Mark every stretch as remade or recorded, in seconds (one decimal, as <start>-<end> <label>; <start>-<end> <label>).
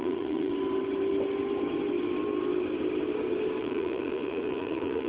0.0-0.5 remade; 0.5-3.6 recorded; 3.6-5.1 remade